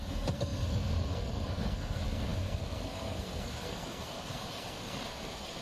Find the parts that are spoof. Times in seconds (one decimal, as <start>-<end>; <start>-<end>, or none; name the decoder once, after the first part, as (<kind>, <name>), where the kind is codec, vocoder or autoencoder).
0.0-5.6 (codec, SNAC)